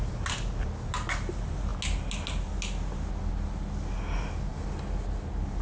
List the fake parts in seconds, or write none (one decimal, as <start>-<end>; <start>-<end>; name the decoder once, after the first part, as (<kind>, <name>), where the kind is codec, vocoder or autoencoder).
none